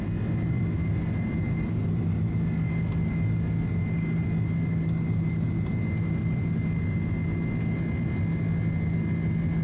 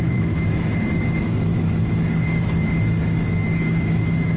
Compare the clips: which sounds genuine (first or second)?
first